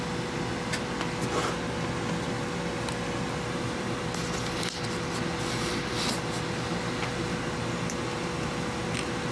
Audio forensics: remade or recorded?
recorded